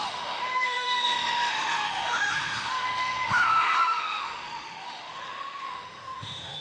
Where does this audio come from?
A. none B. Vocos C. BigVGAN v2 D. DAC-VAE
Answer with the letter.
D